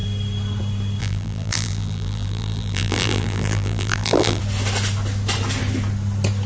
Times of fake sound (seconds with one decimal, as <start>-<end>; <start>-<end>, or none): 1.0-4.4